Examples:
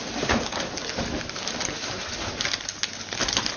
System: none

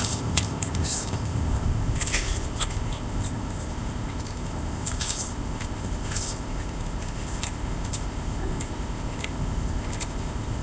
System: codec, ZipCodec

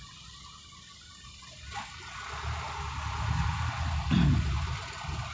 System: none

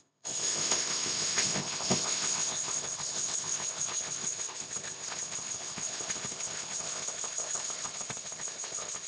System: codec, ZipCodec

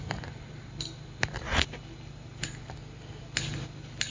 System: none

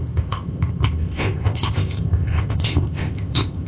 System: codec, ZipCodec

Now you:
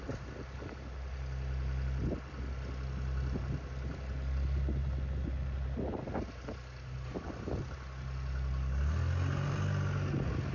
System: none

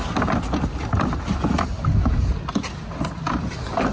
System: none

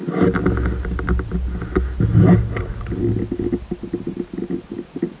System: none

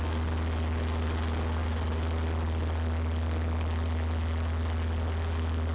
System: none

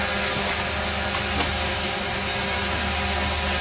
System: none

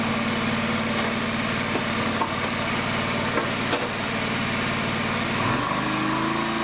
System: none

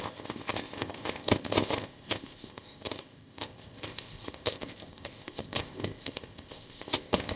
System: codec, ZipCodec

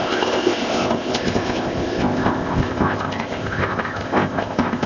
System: codec, ZipCodec